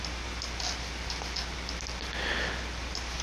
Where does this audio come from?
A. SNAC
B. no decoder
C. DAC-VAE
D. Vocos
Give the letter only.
B